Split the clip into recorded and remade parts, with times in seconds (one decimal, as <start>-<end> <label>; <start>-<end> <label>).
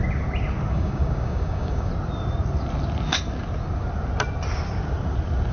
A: 0.0-0.7 recorded; 0.7-1.9 remade; 1.9-5.5 recorded